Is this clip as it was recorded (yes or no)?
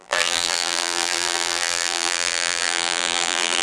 no